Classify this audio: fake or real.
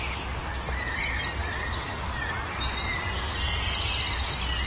real